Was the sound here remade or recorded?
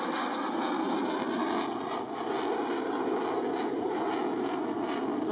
recorded